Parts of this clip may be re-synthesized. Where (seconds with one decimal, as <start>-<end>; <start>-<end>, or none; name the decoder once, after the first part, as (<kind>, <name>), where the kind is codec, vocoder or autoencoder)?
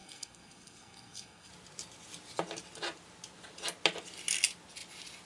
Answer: 0.0-1.5 (codec, SNAC)